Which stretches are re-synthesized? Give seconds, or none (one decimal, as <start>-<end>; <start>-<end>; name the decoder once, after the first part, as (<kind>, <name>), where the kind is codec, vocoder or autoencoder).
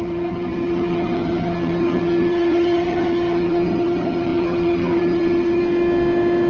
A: 0.0-5.6 (vocoder, HiFi-GAN)